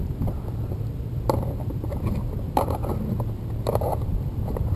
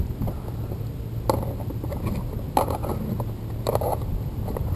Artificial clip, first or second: first